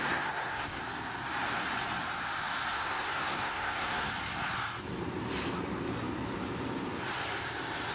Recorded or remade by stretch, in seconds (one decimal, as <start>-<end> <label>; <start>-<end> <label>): 0.0-0.8 remade; 0.8-2.7 recorded; 2.7-4.1 remade; 4.1-7.9 recorded